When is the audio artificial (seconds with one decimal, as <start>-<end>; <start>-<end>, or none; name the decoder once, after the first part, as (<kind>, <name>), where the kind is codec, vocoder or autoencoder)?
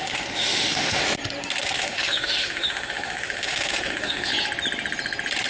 0.0-1.0 (autoencoder, DAC-VAE); 1.6-4.3